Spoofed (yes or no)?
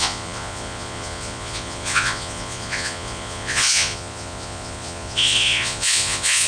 yes